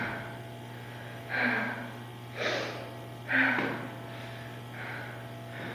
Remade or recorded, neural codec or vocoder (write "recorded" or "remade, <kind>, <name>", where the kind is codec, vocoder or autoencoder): remade, vocoder, BigVGAN v2